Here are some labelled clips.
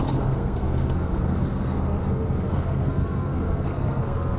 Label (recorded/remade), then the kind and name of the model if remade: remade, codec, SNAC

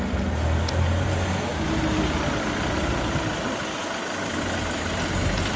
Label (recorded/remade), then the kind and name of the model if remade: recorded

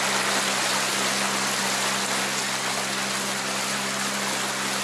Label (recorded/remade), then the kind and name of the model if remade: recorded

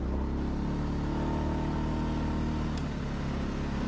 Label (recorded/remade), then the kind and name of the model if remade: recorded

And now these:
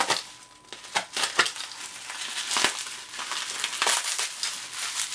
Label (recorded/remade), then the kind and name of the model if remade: recorded